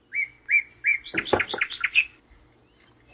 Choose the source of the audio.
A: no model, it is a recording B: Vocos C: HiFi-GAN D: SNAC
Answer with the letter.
A